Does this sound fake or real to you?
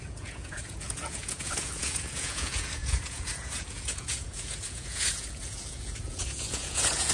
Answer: fake